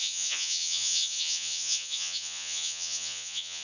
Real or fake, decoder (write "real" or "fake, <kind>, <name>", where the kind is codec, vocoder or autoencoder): fake, vocoder, Vocos